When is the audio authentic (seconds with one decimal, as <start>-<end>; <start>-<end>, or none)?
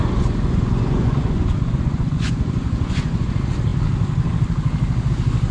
3.3-5.5